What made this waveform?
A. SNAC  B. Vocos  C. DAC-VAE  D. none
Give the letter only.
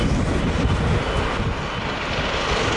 D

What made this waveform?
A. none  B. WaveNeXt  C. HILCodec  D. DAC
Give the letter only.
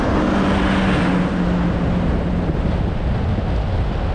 A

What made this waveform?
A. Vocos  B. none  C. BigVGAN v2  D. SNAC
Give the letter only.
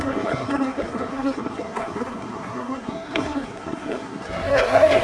D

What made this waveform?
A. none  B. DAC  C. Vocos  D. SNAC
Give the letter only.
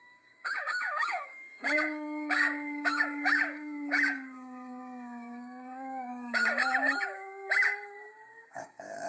B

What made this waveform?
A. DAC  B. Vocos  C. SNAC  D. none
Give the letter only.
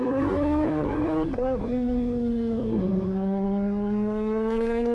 C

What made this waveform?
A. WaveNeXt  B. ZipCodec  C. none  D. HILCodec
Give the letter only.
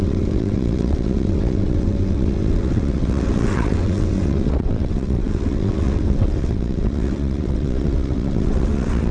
A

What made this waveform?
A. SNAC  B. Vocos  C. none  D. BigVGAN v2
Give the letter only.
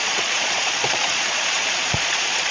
B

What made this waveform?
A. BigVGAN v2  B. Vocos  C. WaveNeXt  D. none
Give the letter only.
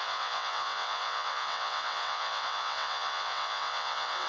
C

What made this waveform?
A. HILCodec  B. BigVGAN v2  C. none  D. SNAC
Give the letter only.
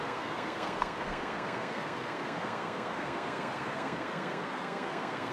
D